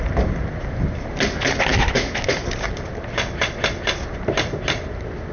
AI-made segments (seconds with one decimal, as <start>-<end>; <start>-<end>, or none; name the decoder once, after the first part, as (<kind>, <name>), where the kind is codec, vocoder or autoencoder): 1.7-2.3 (autoencoder, DAC-VAE)